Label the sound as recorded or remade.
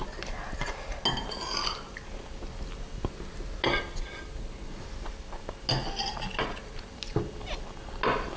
recorded